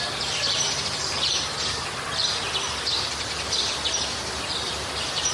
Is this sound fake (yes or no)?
yes